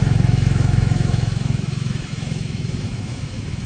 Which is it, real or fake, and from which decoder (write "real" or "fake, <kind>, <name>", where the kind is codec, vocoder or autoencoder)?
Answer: fake, autoencoder, DAC-VAE